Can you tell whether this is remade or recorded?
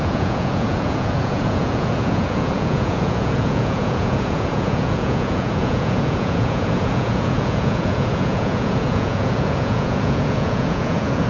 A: remade